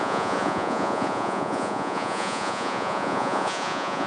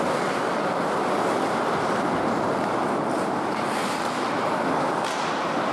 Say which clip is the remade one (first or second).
first